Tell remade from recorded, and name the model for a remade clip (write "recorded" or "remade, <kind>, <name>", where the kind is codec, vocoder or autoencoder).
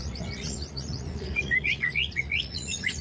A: remade, vocoder, Vocos